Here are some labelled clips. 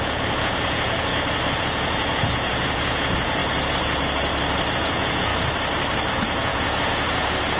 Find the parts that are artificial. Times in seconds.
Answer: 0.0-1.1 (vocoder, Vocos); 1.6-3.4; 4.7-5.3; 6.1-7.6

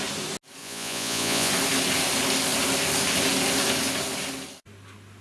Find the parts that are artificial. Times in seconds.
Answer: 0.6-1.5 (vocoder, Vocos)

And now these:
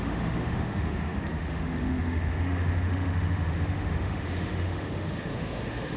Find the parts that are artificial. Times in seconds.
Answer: 0.0-6.0 (autoencoder, DAC-VAE)

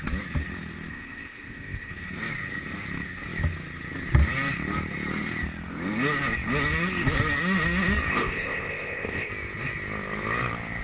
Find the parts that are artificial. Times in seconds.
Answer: 0.9-1.9 (codec, ZipCodec); 8.1-9.3

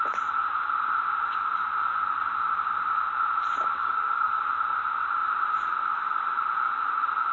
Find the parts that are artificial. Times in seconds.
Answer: 3.8-4.4 (codec, DAC)